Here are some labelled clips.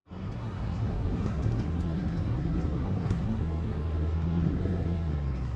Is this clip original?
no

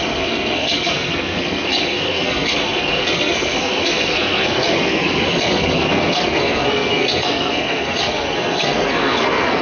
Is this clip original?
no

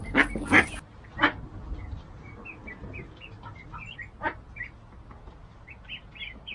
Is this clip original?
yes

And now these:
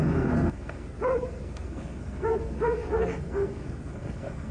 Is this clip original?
no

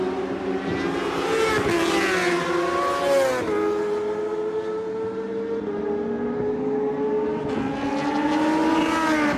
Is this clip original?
yes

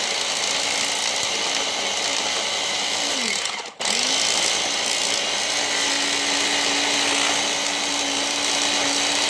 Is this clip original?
yes